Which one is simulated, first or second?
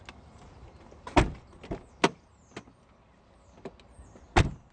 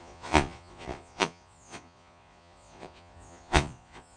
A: second